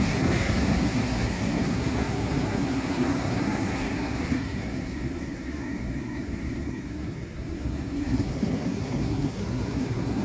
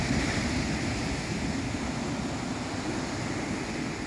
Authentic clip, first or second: second